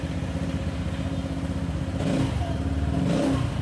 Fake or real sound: real